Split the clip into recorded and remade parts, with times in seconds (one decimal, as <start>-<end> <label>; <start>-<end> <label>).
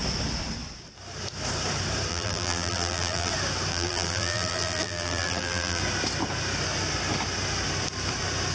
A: 0.0-2.1 recorded; 2.1-3.3 remade; 3.3-3.7 recorded; 3.7-5.8 remade; 5.8-8.5 recorded